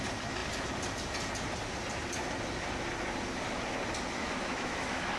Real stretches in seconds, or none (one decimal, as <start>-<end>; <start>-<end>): 0.0-4.2